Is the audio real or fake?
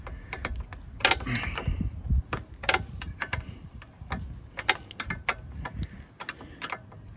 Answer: real